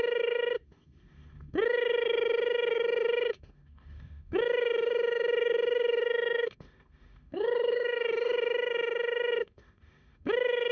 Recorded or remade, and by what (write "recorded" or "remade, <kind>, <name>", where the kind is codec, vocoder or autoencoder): remade, autoencoder, DAC-VAE